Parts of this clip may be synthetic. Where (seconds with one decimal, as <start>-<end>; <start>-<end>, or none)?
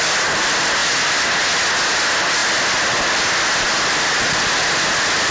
none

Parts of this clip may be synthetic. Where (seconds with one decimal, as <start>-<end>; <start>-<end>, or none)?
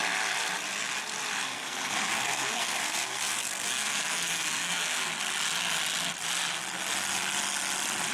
1.4-5.1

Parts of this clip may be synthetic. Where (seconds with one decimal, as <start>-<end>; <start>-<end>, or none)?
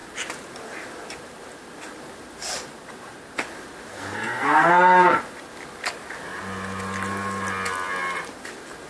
3.9-5.2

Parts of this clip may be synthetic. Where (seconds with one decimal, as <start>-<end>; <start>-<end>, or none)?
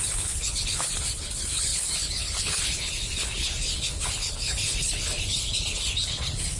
0.0-6.6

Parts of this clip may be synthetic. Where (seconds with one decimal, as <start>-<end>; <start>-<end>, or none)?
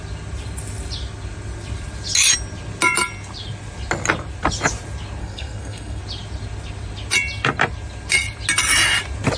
5.2-6.0